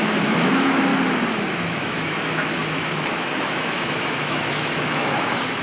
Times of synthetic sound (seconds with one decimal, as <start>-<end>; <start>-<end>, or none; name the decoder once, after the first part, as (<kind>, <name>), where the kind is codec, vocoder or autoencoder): 0.0-0.9 (autoencoder, DAC-VAE); 1.5-5.6